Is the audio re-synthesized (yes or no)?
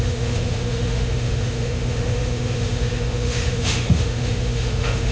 yes